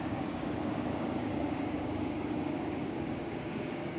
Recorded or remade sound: remade